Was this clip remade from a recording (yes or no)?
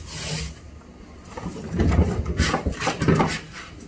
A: no